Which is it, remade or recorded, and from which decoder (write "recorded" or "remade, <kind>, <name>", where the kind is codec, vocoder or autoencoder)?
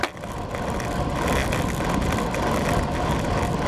recorded